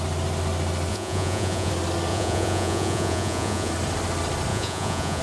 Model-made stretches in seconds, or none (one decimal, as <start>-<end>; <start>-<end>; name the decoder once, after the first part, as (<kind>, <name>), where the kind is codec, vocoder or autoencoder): 0.9-1.7 (vocoder, Vocos); 2.1-3.7; 4.5-5.2